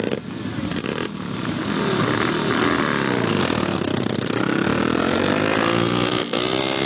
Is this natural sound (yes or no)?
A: yes